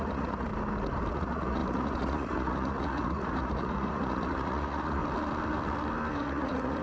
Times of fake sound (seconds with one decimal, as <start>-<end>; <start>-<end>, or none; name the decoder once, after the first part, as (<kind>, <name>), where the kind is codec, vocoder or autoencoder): 0.0-0.5 (vocoder, Vocos); 1.1-5.0; 6.2-6.8